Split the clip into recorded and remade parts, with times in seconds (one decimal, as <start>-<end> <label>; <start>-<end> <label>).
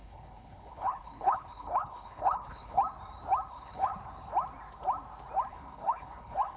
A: 0.0-2.8 remade; 2.8-3.5 recorded; 3.5-3.9 remade; 3.9-5.5 recorded; 5.5-6.6 remade